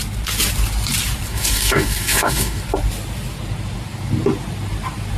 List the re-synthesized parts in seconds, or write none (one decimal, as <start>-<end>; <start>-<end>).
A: 1.3-2.6